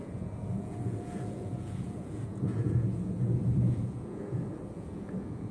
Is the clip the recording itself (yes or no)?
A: no